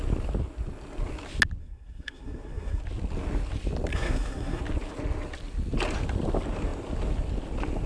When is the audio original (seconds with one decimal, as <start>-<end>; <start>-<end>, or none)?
0.0-1.6; 2.8-3.9; 4.6-7.9